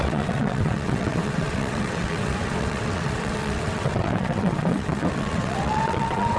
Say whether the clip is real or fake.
fake